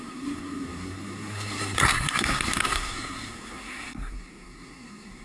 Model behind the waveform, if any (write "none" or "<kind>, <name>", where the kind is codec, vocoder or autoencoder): codec, SNAC